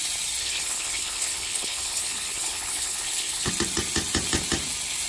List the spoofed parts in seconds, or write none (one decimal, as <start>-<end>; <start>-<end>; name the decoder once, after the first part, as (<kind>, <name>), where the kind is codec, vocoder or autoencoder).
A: 0.4-3.5 (codec, HILCodec)